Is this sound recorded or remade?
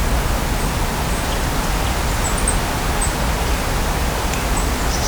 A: recorded